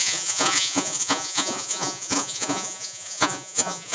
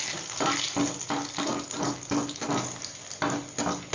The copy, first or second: first